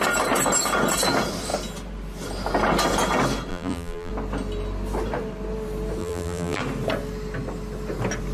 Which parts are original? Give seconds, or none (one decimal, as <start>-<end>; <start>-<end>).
0.0-3.5; 4.1-6.0; 6.6-8.3